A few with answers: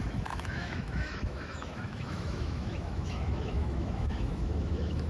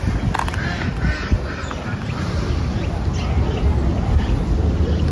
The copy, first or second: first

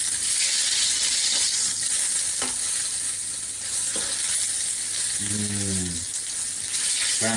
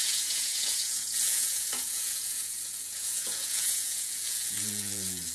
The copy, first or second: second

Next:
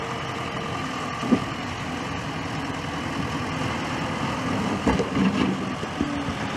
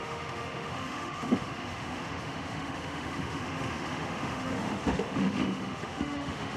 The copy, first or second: second